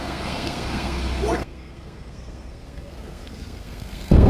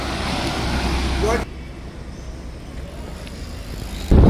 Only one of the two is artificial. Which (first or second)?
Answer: first